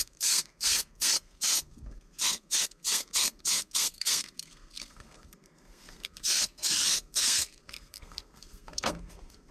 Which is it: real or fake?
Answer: fake